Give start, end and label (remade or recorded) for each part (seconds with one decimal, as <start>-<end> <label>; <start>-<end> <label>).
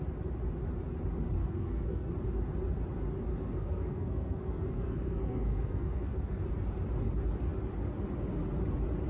0.0-1.4 recorded; 1.4-2.1 remade; 2.1-3.3 recorded; 3.3-6.4 remade; 6.4-9.1 recorded